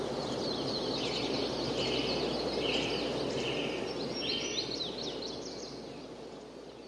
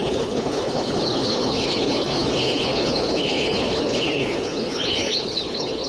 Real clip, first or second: first